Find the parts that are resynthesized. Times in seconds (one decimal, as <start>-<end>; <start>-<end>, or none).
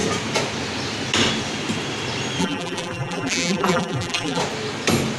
2.4-4.4